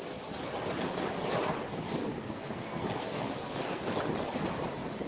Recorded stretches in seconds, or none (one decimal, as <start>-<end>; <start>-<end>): 0.0-2.2; 3.8-5.1